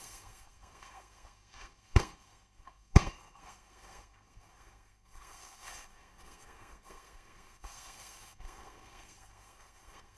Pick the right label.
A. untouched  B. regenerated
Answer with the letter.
B